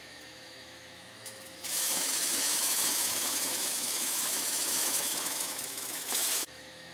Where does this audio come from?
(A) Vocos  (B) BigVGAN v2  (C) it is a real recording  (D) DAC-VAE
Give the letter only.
D